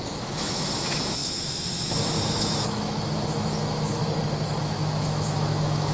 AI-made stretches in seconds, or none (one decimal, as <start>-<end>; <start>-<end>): 0.0-4.0; 4.6-5.9